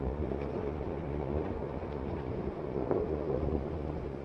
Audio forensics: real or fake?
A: fake